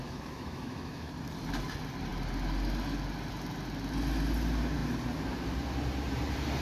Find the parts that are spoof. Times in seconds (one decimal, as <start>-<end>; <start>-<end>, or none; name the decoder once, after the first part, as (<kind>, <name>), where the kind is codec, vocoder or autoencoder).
0.0-1.1 (autoencoder, DAC-VAE)